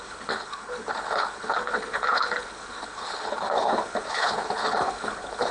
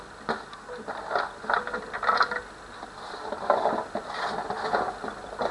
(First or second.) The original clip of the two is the second